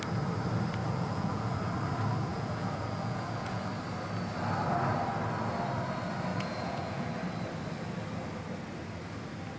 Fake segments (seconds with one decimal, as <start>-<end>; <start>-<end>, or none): 0.8-1.7; 2.3-3.7; 6.3-7.1